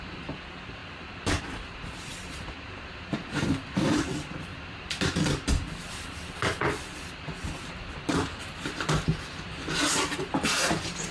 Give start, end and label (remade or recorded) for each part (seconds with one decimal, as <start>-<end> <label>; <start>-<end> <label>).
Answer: 0.0-0.8 remade; 0.8-1.4 recorded; 1.4-10.1 remade; 10.1-11.1 recorded